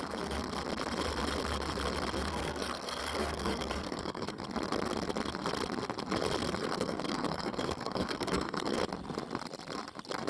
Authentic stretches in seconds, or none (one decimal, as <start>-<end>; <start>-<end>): 0.0-2.2; 4.4-6.6; 8.8-10.3